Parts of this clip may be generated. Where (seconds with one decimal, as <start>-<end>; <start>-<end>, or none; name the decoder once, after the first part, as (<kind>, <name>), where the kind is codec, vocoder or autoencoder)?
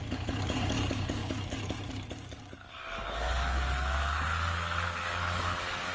0.0-5.9 (codec, DAC)